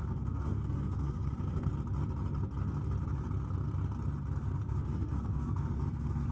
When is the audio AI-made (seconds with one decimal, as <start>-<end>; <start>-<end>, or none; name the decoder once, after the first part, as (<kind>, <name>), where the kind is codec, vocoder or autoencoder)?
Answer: 0.0-1.7 (codec, SNAC); 4.4-6.3

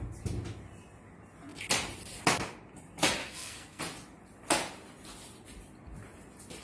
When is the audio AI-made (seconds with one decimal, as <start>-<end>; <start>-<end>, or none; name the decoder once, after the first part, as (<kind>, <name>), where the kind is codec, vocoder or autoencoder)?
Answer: 3.2-3.8 (codec, SNAC)

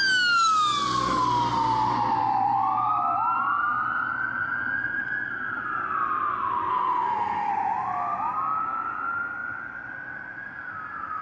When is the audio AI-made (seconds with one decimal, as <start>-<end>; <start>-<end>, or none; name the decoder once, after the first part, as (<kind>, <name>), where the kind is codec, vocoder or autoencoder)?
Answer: 6.7-7.5 (codec, SNAC)

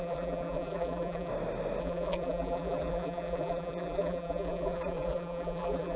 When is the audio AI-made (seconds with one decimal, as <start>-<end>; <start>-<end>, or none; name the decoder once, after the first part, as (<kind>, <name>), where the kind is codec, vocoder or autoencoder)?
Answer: 0.0-1.3 (vocoder, BigVGAN v2); 1.8-6.0

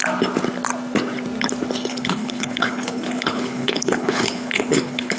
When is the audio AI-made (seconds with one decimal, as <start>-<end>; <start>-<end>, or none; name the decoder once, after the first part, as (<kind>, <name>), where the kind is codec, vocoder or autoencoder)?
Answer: 1.9-5.2 (codec, HILCodec)